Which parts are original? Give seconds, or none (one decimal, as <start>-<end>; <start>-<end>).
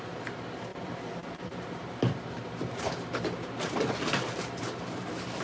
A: none